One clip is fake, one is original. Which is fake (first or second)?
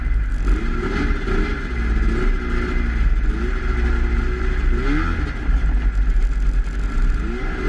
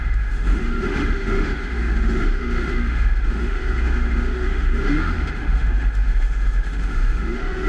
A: second